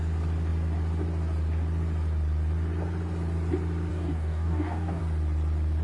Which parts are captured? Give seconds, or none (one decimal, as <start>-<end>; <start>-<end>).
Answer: 0.0-3.9; 5.0-5.8